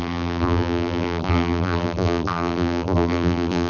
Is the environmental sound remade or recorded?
remade